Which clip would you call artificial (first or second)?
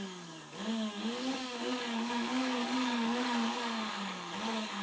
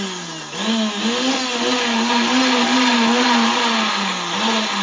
first